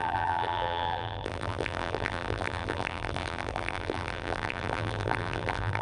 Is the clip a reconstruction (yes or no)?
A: yes